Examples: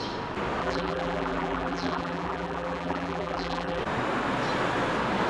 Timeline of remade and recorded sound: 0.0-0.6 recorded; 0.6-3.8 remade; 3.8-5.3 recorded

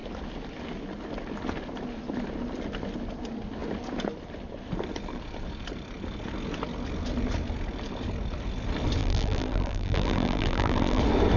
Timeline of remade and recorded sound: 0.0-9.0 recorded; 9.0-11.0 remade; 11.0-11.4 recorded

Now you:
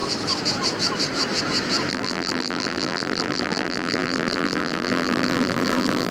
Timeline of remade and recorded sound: 0.0-1.9 recorded; 1.9-6.1 remade

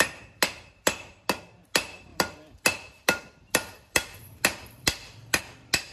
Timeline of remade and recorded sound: 0.0-2.1 recorded; 2.1-5.4 remade; 5.4-5.9 recorded

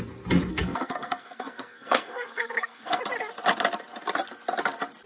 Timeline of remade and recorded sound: 0.0-0.5 recorded; 0.5-3.0 remade; 3.0-5.1 recorded